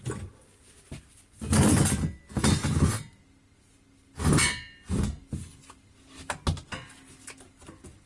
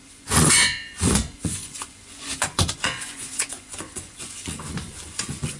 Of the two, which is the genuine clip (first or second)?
first